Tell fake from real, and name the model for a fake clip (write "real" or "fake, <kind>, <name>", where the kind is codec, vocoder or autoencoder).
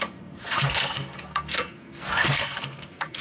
fake, codec, SNAC